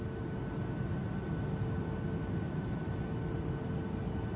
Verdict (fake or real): real